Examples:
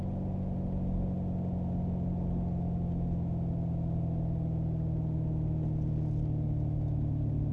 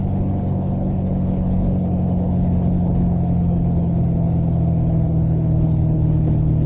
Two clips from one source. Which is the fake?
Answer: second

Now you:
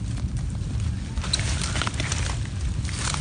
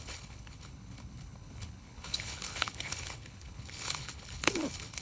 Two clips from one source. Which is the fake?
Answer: second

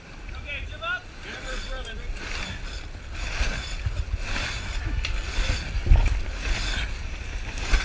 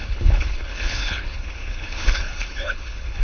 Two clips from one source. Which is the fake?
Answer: second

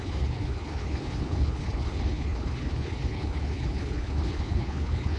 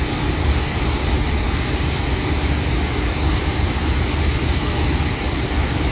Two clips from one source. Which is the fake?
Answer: first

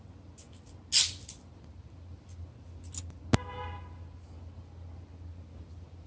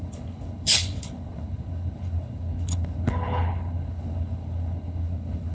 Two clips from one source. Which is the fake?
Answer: second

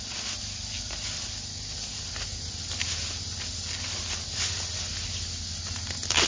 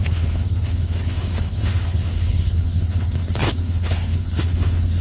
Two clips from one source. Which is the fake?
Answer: second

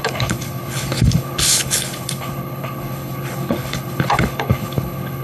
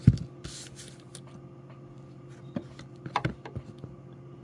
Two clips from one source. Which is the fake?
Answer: first